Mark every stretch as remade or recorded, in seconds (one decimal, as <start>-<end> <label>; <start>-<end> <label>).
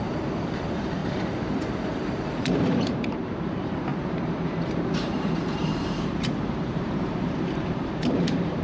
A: 0.0-1.0 remade; 1.0-1.9 recorded; 1.9-8.6 remade